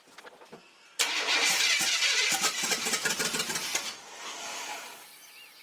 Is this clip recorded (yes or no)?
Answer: yes